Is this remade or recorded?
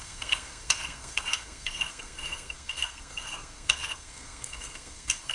remade